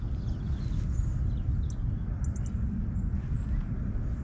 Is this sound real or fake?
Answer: real